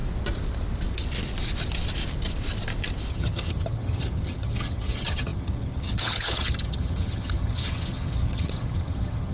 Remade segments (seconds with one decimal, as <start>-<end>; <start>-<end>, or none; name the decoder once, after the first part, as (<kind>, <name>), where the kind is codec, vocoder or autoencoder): 3.1-9.3 (vocoder, HiFi-GAN)